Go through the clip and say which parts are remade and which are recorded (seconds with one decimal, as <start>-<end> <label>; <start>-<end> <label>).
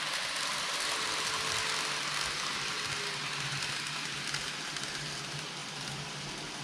0.0-6.6 recorded